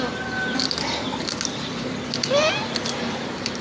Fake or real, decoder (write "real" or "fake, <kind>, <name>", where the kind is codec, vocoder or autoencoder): real